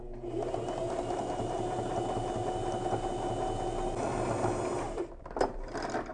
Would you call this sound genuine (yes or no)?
yes